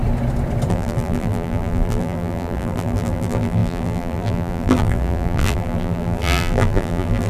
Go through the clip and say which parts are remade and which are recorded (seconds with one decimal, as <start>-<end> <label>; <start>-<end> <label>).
0.0-0.7 recorded; 0.7-7.3 remade